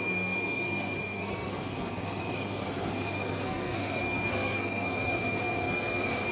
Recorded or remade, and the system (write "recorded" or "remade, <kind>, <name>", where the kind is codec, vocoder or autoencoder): remade, codec, SNAC